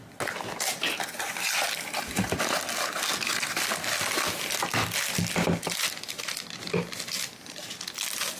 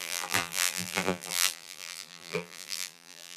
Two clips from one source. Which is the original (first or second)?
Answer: first